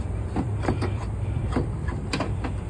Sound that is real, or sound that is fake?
fake